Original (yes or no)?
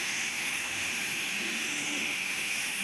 no